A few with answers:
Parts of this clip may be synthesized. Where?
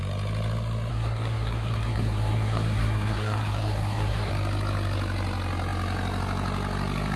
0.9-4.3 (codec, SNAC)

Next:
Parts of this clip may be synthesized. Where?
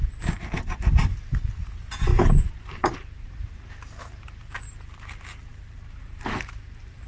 2.1-3.3 (vocoder, BigVGAN v2); 5.5-7.1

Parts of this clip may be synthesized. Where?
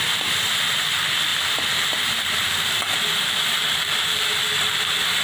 1.3-4.4 (vocoder, BigVGAN v2)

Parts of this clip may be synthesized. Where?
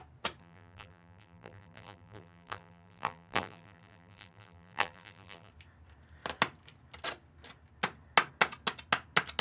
0.4-5.5 (vocoder, BigVGAN v2)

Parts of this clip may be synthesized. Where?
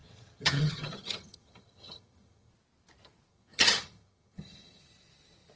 0.0-2.5 (vocoder, HiFi-GAN); 3.3-4.8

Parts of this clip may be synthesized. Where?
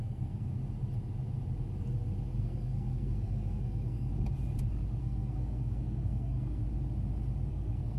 0.0-0.6 (codec, SNAC); 2.4-4.1; 5.0-6.6; 7.5-8.0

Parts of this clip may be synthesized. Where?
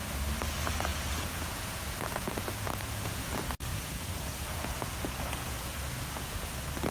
0.9-3.3 (vocoder, Vocos); 3.7-6.5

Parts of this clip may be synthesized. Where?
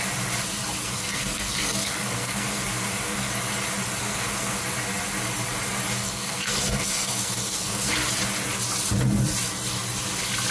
0.8-3.3 (codec, SNAC); 4.0-4.6; 6.0-7.9